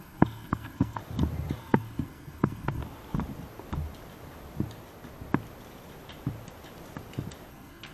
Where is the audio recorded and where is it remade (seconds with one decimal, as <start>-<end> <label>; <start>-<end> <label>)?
0.0-1.0 remade; 1.0-1.6 recorded; 1.6-2.8 remade; 2.8-7.5 recorded; 7.5-7.9 remade